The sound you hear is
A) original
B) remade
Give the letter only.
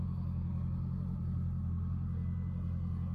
A